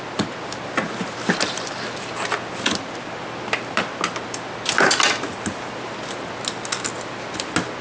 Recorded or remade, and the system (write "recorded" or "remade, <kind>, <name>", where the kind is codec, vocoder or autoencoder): recorded